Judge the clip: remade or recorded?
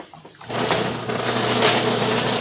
recorded